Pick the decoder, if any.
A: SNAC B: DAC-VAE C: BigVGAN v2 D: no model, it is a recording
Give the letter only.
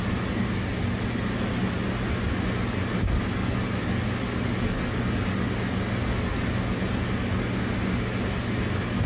D